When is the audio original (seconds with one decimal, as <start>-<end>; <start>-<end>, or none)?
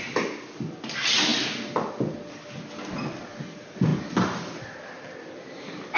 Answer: 0.0-6.0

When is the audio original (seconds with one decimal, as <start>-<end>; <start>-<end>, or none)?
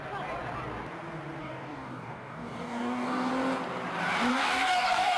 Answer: 0.0-1.4; 3.3-4.3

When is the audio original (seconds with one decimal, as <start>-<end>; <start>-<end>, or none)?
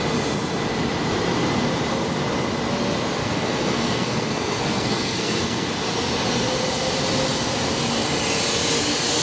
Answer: 0.0-3.2; 5.7-9.2